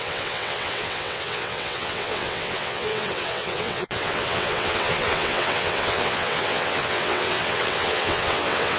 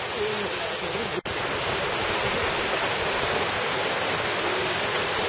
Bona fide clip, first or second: second